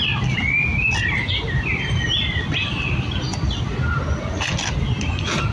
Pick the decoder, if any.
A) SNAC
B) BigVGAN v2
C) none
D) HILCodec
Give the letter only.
C